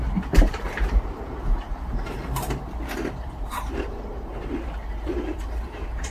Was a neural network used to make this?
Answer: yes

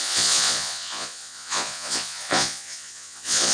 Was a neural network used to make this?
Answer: yes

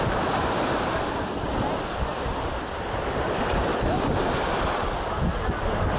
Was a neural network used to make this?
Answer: no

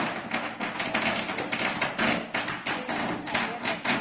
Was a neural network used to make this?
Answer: no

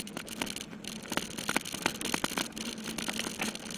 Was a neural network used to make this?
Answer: no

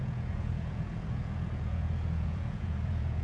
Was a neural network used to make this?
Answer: yes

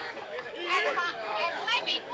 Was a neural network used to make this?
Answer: yes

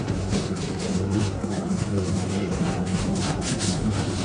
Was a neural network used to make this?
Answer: yes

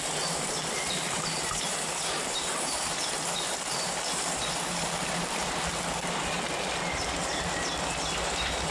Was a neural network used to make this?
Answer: yes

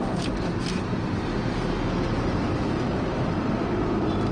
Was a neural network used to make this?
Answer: no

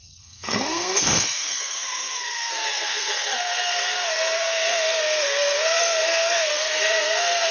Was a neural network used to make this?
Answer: yes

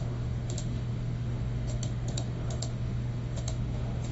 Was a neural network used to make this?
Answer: yes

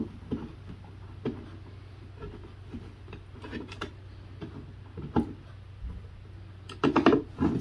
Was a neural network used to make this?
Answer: no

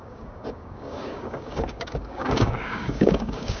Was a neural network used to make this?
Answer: yes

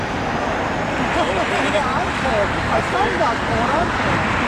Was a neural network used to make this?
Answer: no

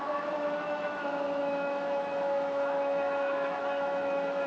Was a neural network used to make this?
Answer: yes